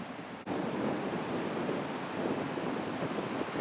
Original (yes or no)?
yes